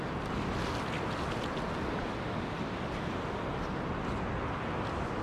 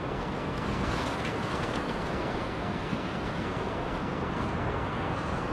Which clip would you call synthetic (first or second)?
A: second